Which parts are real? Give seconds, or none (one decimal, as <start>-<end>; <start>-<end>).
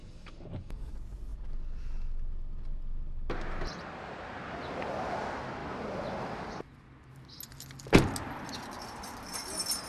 0.9-9.9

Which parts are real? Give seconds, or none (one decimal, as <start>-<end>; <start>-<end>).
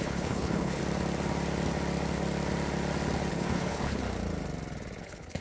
0.8-3.3; 4.0-5.0